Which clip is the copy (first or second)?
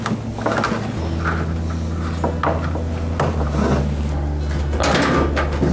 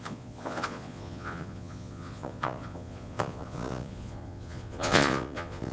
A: second